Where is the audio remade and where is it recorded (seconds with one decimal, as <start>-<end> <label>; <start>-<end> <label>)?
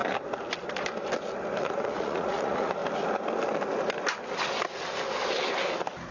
0.0-1.6 recorded; 1.6-2.8 remade; 2.8-6.1 recorded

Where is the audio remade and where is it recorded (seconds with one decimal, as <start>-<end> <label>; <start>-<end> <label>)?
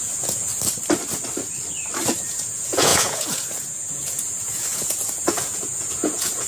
0.0-0.5 remade; 0.5-2.3 recorded; 2.3-6.5 remade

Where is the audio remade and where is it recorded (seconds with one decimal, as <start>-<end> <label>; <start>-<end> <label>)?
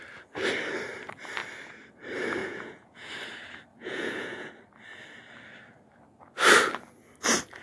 0.0-2.4 recorded; 2.4-3.1 remade; 3.1-3.7 recorded; 3.7-4.5 remade; 4.5-7.6 recorded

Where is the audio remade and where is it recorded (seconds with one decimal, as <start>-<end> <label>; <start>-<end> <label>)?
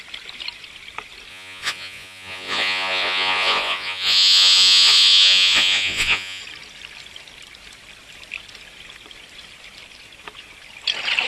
0.0-1.3 recorded; 1.3-6.4 remade; 6.4-11.3 recorded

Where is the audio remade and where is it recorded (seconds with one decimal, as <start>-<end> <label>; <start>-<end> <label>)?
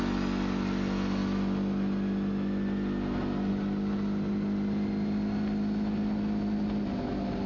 0.0-7.5 recorded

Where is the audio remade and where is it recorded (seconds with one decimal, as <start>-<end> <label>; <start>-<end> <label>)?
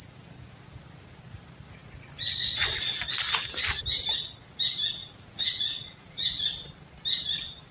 0.0-5.0 recorded; 5.0-6.5 remade; 6.5-7.7 recorded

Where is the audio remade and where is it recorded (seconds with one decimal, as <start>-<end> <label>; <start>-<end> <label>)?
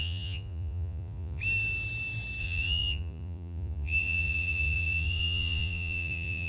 0.0-1.4 remade; 1.4-2.4 recorded; 2.4-6.5 remade